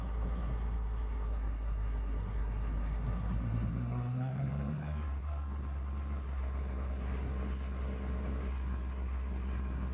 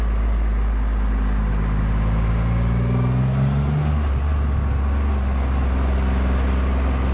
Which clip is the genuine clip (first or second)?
second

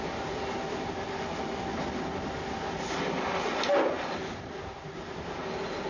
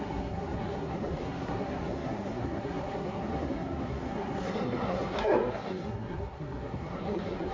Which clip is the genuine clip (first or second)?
first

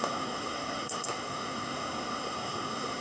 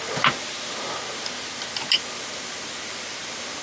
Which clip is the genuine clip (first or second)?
second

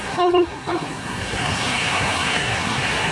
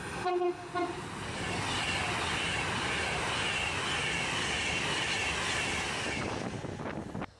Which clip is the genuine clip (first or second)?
second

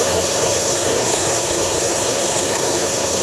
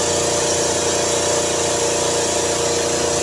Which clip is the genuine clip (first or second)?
second